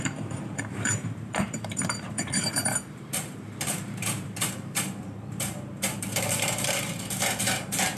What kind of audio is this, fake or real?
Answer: fake